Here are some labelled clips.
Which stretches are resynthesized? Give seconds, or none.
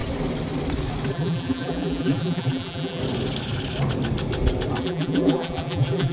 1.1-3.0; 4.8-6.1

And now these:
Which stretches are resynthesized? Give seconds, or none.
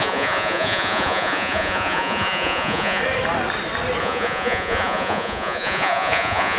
0.0-3.0; 4.0-6.6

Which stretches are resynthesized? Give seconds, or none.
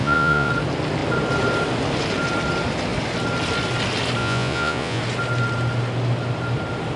0.0-0.5; 4.2-5.0